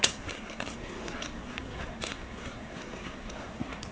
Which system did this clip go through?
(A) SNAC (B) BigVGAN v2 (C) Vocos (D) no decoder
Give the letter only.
A